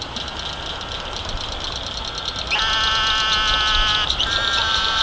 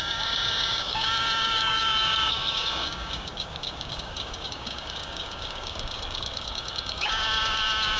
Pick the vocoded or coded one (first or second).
second